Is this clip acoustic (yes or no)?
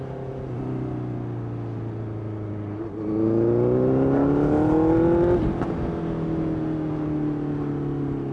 yes